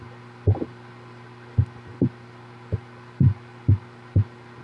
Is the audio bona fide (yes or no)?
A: yes